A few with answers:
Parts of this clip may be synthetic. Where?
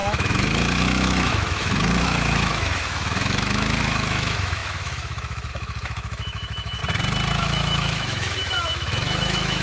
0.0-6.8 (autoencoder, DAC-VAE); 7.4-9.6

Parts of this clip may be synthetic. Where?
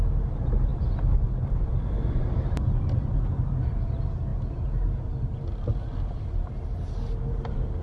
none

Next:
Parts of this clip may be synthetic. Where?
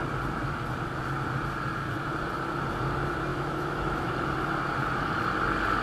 3.3-4.1 (autoencoder, DAC-VAE)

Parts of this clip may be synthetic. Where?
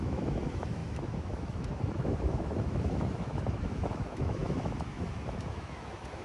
0.0-6.2 (autoencoder, DAC-VAE)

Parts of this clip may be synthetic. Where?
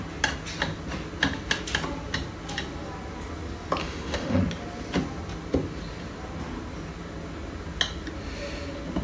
3.8-4.4 (autoencoder, DAC-VAE)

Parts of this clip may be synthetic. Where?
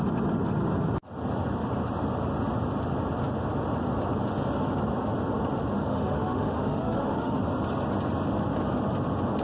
5.9-7.4 (autoencoder, DAC-VAE)